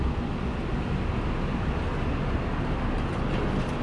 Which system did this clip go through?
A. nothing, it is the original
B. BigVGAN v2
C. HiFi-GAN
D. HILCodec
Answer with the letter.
A